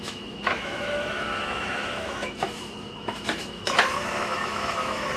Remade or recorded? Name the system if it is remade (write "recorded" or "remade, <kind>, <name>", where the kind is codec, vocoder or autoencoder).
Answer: remade, autoencoder, DAC-VAE